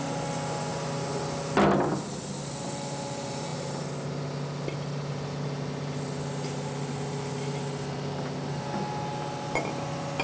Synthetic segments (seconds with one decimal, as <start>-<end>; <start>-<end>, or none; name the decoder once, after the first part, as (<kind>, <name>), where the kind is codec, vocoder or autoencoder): none